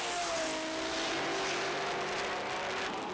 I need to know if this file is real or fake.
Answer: real